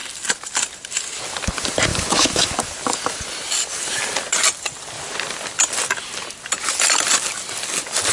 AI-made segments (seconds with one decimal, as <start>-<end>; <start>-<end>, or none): 1.9-2.5